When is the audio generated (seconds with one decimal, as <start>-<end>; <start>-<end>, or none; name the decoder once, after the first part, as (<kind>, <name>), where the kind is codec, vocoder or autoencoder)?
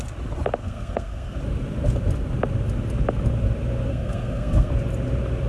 0.6-1.4 (codec, SNAC); 3.9-4.7